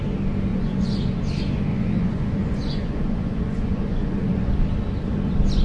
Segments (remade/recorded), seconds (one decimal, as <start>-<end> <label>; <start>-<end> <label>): 0.0-0.5 recorded; 0.5-1.2 remade; 1.2-1.7 recorded; 1.7-4.5 remade; 4.5-5.6 recorded